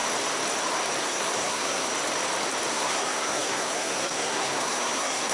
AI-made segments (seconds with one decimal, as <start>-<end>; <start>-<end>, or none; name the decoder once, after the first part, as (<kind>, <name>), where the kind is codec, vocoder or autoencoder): 1.0-1.9 (codec, SNAC); 2.7-5.3